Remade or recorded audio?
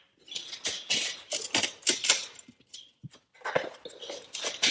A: recorded